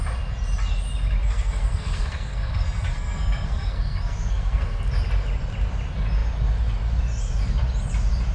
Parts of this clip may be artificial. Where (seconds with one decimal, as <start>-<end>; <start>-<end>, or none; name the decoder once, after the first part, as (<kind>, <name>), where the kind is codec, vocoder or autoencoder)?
1.2-4.9 (codec, SNAC)